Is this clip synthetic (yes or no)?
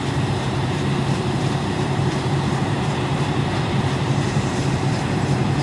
yes